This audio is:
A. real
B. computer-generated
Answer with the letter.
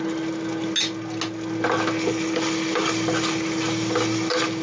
A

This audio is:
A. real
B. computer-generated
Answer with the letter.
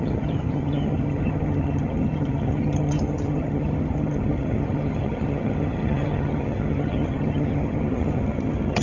B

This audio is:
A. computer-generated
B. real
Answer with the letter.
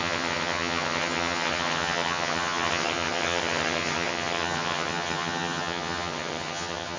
A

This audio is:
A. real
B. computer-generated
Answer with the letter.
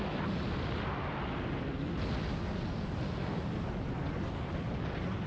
A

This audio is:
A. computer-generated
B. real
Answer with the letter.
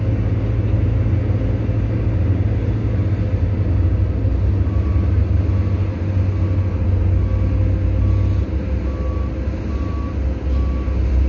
B